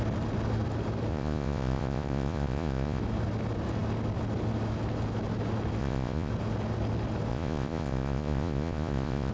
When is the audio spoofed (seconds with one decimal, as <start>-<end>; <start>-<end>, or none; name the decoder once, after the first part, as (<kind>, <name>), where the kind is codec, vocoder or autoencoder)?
1.1-3.0 (vocoder, Vocos); 5.8-6.3; 7.3-9.3